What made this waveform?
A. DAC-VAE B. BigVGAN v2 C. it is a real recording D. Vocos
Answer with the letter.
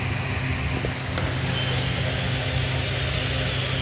C